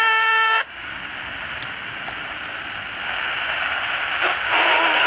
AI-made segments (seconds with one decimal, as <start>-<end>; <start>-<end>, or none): 0.0-0.9; 4.0-5.1